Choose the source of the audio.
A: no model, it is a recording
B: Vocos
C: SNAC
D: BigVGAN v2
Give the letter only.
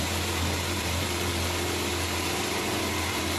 D